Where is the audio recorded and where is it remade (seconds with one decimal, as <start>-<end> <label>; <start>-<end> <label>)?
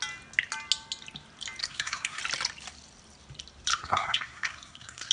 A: 0.0-1.6 recorded; 1.6-2.2 remade; 2.2-3.7 recorded; 3.7-5.1 remade